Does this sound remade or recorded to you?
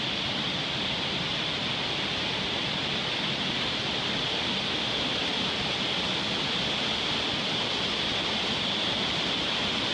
recorded